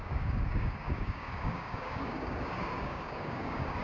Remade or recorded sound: remade